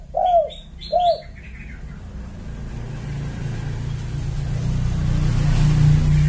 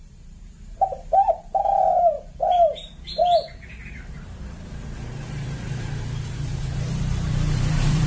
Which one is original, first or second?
first